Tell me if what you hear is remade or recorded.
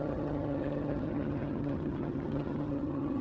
remade